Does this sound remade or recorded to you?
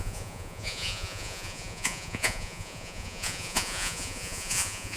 remade